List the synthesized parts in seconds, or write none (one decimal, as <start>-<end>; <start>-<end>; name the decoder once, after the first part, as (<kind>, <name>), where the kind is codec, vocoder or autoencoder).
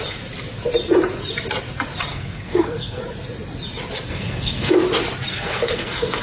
2.1-3.0 (codec, SNAC); 4.1-4.7; 5.3-6.2